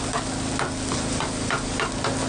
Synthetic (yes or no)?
no